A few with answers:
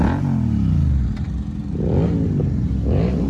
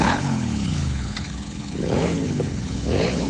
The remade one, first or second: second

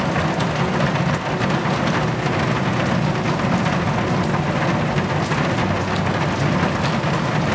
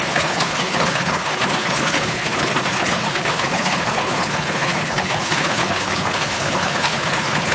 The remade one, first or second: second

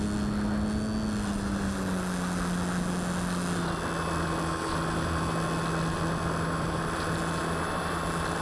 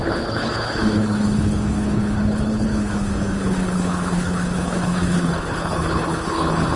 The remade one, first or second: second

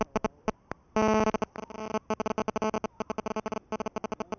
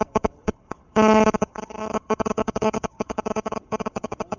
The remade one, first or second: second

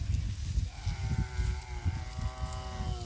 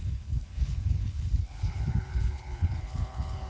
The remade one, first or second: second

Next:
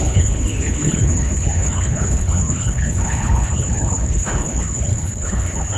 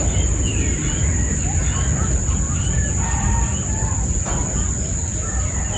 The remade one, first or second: first